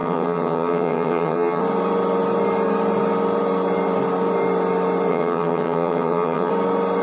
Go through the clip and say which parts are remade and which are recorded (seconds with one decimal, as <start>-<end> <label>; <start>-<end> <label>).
0.0-1.6 remade; 1.6-5.1 recorded; 5.1-6.5 remade; 6.5-7.0 recorded